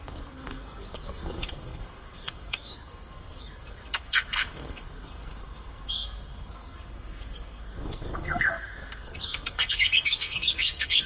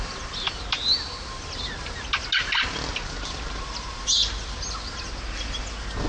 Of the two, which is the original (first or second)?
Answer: second